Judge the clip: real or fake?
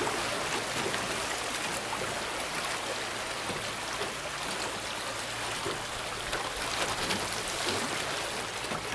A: real